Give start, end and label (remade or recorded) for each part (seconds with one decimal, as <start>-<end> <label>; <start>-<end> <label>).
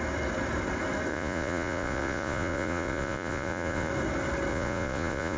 0.0-1.1 recorded; 1.1-3.9 remade; 3.9-4.5 recorded; 4.5-5.4 remade